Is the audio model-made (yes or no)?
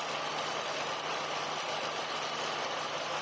no